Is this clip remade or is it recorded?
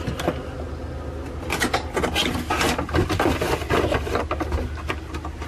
recorded